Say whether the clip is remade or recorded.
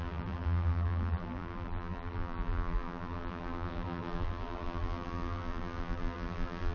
remade